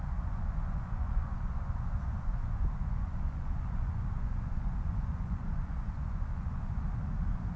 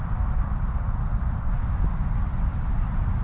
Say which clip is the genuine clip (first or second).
second